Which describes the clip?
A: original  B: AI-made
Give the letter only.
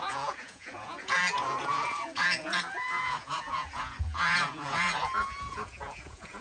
B